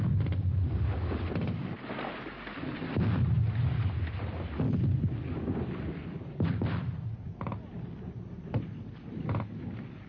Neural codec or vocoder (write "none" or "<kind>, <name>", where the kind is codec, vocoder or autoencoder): none